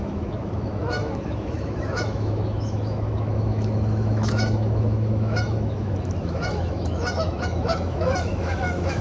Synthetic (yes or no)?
yes